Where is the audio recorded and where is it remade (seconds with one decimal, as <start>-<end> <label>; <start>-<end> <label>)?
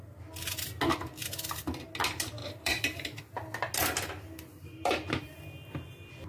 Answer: 0.0-2.4 recorded; 2.4-3.2 remade; 3.2-3.8 recorded; 3.8-5.4 remade; 5.4-6.3 recorded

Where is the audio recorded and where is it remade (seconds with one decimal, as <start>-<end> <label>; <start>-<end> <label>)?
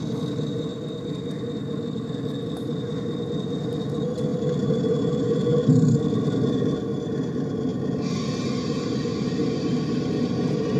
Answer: 0.0-4.3 recorded; 4.3-5.0 remade; 5.0-5.5 recorded; 5.5-7.1 remade; 7.1-10.8 recorded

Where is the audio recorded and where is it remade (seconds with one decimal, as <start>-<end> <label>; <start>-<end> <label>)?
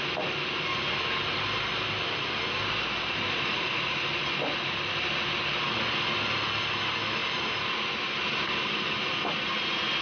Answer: 0.0-7.2 recorded; 7.2-9.1 remade; 9.1-10.0 recorded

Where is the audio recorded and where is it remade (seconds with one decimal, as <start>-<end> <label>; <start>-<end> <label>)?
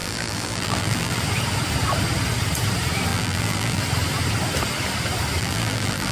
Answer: 0.0-1.2 remade; 1.2-3.1 recorded; 3.1-3.8 remade; 3.8-5.4 recorded; 5.4-6.1 remade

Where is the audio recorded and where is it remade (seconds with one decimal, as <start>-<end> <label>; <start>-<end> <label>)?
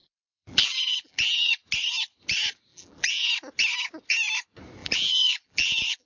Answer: 0.0-1.5 remade; 1.5-2.7 recorded; 2.7-3.3 remade; 3.3-4.8 recorded; 4.8-6.1 remade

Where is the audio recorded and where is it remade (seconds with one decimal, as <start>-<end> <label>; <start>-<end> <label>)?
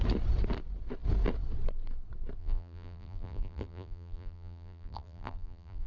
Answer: 0.0-2.4 recorded; 2.4-5.9 remade